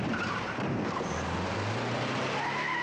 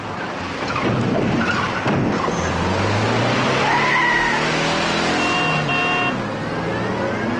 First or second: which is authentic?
second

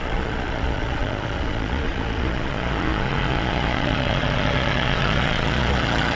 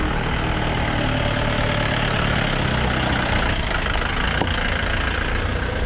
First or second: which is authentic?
second